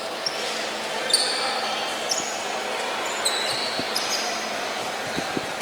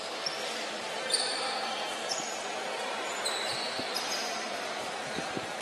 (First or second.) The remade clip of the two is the second